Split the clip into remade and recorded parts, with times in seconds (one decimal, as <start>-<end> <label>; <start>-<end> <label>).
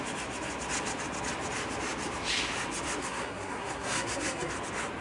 0.0-3.0 recorded; 3.0-4.5 remade; 4.5-5.0 recorded